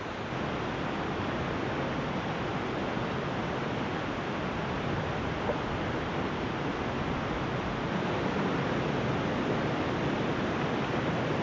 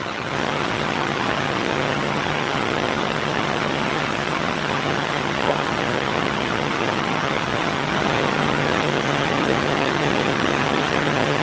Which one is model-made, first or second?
second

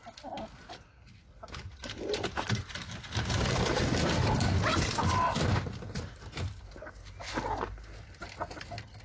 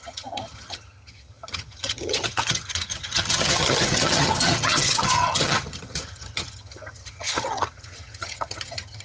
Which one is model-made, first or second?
second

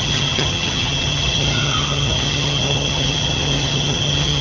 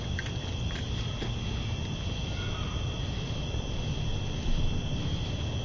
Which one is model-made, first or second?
first